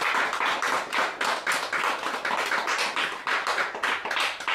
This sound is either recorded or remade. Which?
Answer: recorded